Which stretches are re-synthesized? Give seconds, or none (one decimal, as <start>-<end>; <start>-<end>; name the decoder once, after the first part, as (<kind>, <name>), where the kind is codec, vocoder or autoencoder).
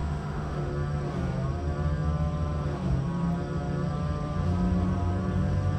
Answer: 0.0-0.7 (autoencoder, DAC-VAE)